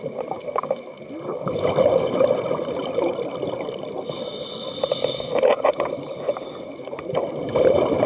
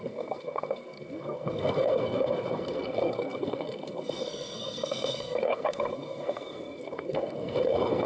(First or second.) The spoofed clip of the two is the second